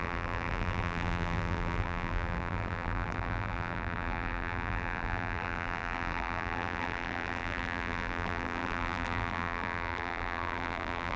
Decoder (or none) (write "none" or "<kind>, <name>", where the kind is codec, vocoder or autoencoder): vocoder, BigVGAN v2